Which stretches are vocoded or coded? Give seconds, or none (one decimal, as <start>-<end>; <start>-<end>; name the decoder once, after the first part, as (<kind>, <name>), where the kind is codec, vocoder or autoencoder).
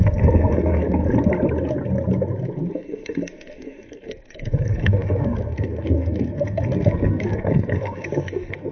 0.0-1.0 (codec, SNAC); 2.7-8.7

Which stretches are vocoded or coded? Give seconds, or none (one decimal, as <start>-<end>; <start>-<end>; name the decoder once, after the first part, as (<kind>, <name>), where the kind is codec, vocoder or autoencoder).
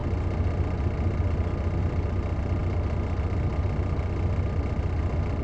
none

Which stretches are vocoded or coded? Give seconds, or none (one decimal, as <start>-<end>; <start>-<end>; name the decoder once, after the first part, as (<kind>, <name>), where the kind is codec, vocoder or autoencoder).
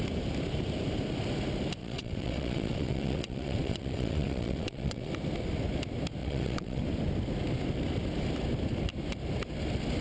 1.8-5.1 (vocoder, WaveNeXt); 6.2-6.8